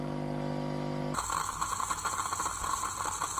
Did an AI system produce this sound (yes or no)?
no